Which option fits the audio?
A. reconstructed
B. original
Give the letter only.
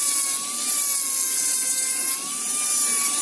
B